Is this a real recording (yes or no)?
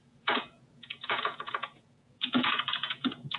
no